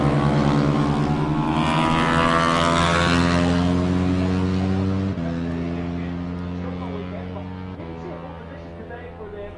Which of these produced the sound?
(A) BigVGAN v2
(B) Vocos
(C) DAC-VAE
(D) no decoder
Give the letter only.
D